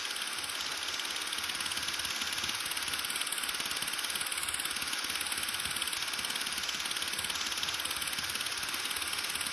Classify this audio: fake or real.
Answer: real